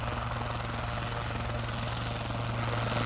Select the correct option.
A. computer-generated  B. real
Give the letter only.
B